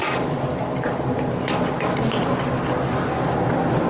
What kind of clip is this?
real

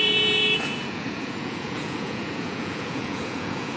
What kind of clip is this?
fake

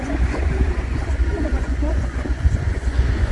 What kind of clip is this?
fake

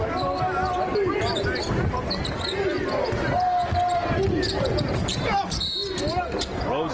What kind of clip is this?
real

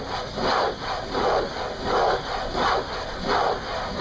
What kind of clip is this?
real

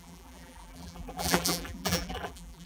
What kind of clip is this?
fake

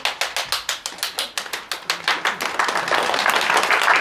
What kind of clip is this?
real